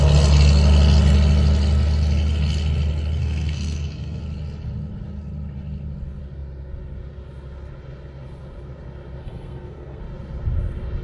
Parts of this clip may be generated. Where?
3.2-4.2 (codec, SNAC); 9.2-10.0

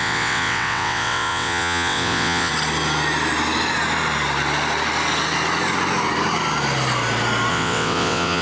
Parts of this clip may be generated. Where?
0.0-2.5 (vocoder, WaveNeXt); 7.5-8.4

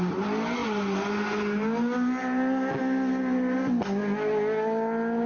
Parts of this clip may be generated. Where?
none

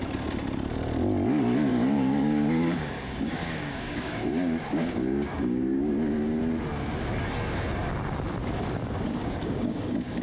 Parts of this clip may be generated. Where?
1.7-6.4 (codec, DAC); 8.8-10.2

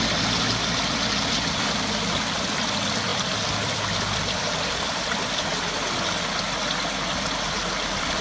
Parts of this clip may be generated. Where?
3.1-4.4 (vocoder, BigVGAN v2)